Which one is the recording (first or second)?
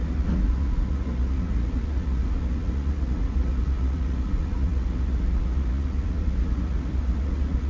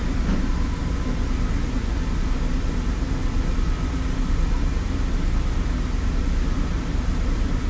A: second